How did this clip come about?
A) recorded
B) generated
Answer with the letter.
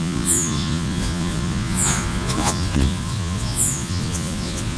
B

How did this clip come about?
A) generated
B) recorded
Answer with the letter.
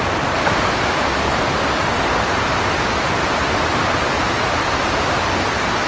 B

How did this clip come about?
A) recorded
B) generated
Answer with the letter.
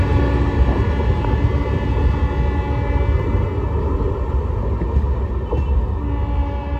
A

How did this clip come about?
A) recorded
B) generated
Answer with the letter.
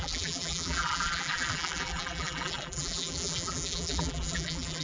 B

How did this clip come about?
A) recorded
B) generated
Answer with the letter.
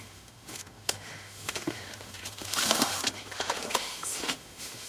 B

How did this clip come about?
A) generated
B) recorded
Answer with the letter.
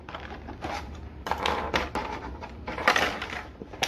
A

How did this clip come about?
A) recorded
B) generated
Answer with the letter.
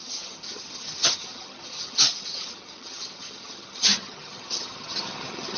B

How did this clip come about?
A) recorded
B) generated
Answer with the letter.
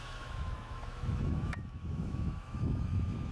B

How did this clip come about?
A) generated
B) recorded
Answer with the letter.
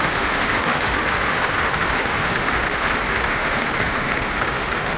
A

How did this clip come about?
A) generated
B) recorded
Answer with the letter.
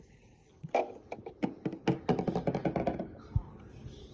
B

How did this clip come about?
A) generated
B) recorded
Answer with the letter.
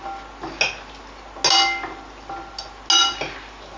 B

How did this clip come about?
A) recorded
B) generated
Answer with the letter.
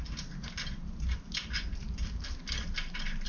A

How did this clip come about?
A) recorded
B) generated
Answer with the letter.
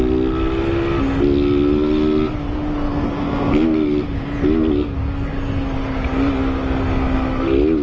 A